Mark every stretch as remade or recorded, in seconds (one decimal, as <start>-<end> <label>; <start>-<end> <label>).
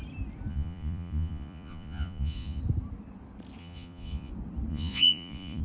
0.0-0.5 recorded; 0.5-2.6 remade; 2.6-3.6 recorded; 3.6-4.3 remade; 4.3-4.7 recorded; 4.7-5.6 remade